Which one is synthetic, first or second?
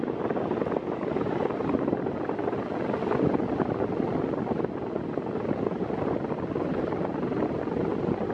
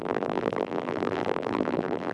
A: second